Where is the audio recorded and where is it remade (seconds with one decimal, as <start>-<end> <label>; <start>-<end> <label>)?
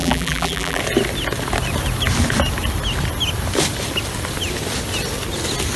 0.0-0.8 remade; 0.8-5.8 recorded